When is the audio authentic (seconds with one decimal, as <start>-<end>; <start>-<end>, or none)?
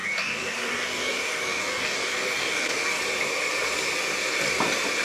3.0-5.0